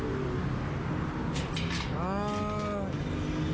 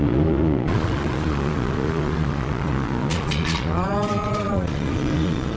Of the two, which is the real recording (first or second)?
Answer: first